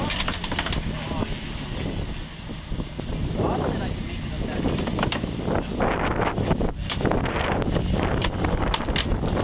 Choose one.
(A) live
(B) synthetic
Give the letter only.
A